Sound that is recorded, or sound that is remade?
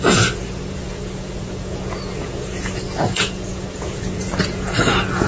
remade